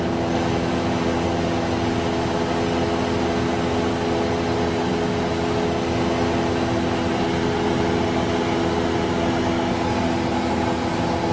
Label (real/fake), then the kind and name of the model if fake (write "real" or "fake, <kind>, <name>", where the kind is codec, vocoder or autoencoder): real